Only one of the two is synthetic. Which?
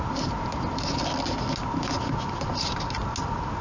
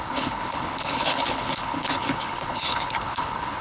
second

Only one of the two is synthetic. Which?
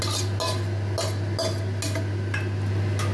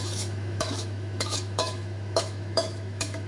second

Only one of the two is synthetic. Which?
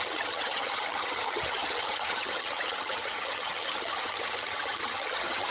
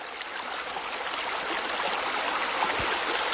first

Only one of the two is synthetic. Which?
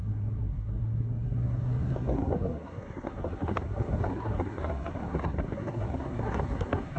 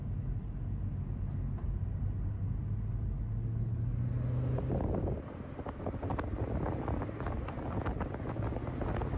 first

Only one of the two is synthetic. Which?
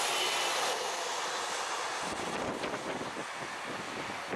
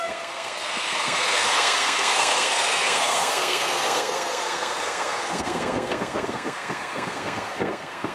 second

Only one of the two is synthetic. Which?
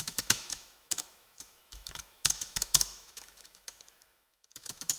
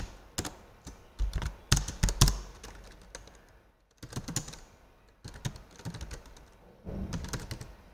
first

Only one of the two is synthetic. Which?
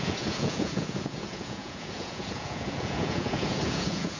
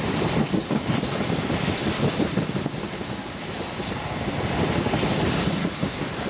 first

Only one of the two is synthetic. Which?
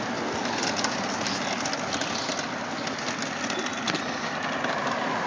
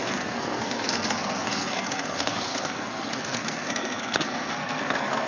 second